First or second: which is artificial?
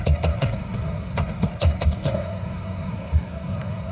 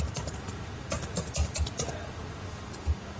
first